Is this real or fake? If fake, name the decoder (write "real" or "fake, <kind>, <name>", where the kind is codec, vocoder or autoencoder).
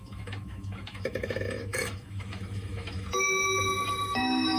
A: fake, autoencoder, DAC-VAE